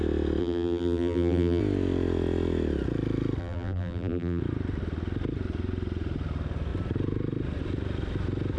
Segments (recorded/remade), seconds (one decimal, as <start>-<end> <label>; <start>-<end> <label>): 0.0-0.4 recorded; 0.4-1.6 remade; 1.6-3.4 recorded; 3.4-4.4 remade; 4.4-8.6 recorded